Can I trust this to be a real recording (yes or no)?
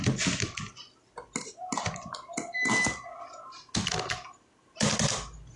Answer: yes